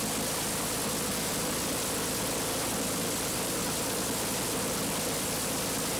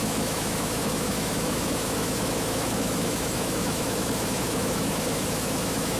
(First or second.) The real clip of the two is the first